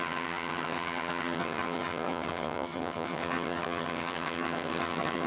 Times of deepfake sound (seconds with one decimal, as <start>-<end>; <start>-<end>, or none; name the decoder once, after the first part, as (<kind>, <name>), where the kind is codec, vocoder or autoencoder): 0.0-5.3 (vocoder, HiFi-GAN)